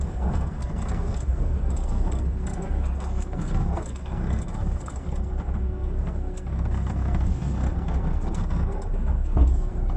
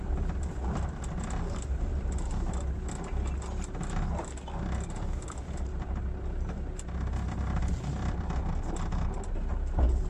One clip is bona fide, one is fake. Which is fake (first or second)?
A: first